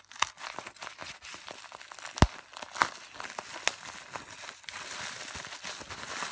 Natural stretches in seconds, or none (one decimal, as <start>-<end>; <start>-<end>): 0.0-6.3